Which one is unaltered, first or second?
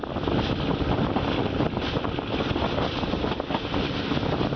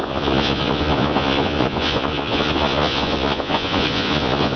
first